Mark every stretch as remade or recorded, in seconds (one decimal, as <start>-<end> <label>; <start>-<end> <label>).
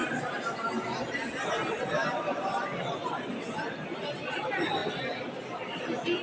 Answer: 0.0-6.2 recorded